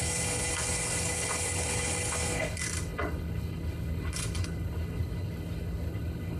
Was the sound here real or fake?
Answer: fake